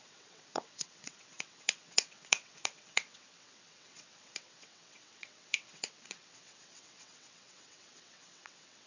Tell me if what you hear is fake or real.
fake